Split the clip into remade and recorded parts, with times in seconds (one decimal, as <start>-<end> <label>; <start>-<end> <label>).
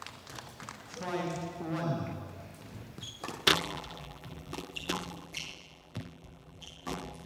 0.0-3.5 recorded; 3.5-7.3 remade